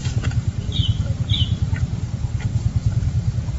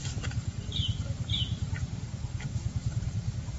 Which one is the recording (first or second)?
first